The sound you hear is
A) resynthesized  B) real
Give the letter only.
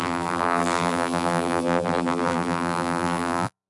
A